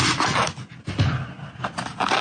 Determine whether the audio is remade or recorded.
recorded